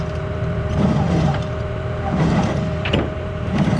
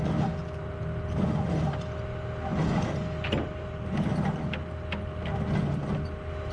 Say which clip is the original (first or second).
second